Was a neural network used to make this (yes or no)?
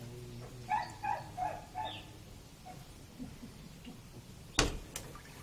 no